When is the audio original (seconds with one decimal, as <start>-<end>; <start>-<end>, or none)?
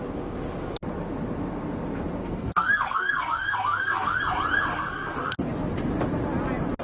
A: 0.0-2.2; 4.2-4.7; 5.5-6.8